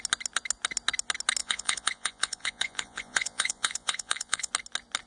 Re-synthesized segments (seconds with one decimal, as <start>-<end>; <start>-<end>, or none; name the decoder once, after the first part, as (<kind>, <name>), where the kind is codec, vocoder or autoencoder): 1.4-4.5 (vocoder, Vocos)